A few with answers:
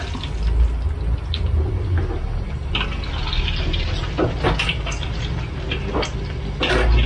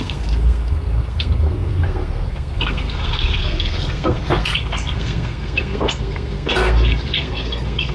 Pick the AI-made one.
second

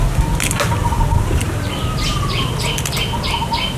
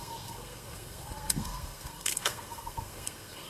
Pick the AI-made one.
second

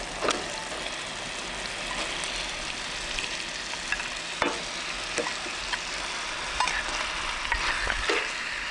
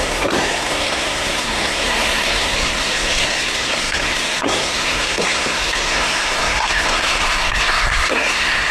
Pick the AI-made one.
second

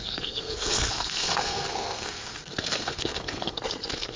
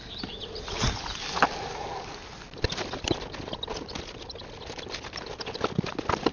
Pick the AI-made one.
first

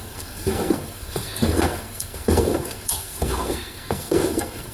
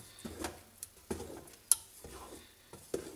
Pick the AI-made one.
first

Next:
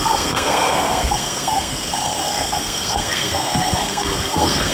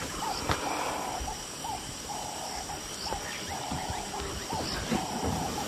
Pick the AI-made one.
first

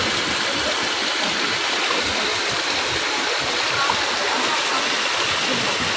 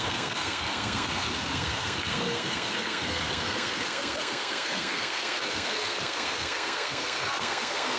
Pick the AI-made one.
second